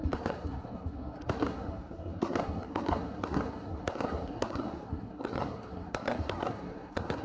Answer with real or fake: fake